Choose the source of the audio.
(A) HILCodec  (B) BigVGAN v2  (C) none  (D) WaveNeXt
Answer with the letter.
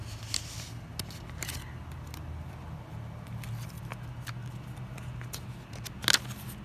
C